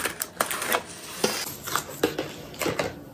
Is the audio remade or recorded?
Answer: recorded